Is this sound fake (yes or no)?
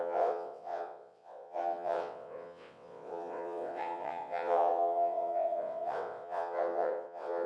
yes